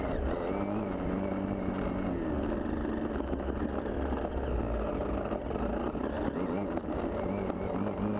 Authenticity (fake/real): real